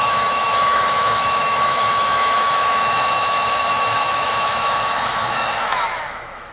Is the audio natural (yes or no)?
no